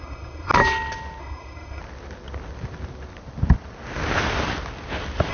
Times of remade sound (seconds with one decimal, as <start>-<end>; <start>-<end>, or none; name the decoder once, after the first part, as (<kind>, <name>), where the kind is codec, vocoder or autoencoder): 0.0-0.5 (codec, SNAC); 1.2-1.8